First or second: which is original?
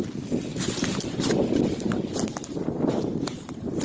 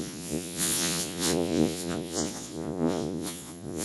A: first